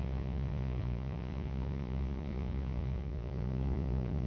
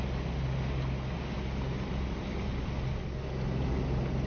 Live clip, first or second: second